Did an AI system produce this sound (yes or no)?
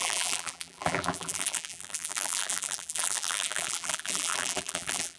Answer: yes